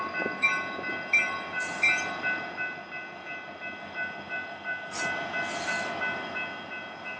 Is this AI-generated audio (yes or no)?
no